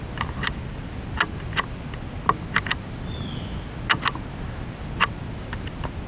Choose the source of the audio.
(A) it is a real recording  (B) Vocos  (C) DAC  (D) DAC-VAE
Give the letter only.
A